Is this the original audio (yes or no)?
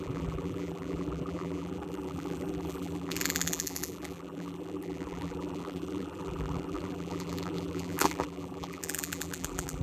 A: no